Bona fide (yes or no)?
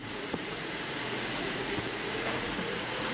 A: no